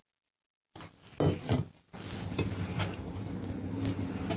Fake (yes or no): no